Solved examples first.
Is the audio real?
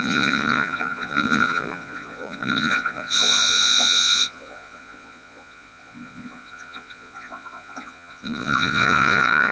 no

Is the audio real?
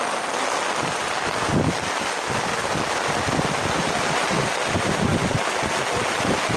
yes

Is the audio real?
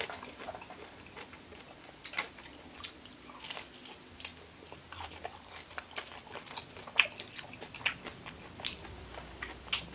yes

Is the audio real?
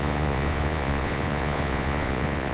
no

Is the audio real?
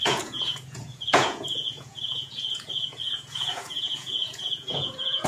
no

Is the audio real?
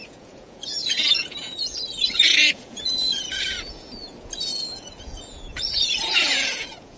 no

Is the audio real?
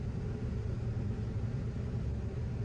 yes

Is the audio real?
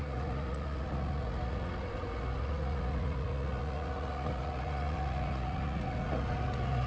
no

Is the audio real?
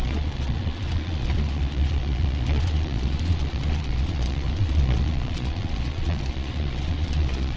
no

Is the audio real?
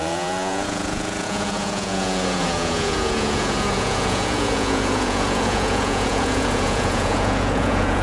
no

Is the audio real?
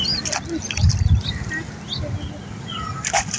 yes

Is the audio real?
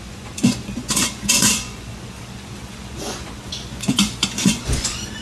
no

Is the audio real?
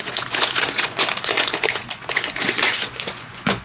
no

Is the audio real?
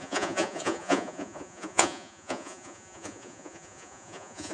no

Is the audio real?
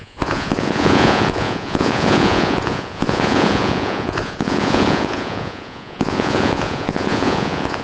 no